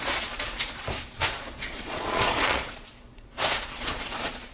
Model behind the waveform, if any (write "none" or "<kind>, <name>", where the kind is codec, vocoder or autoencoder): vocoder, Vocos